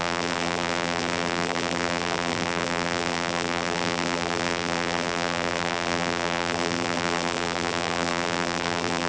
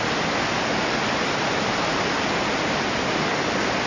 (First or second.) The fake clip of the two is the first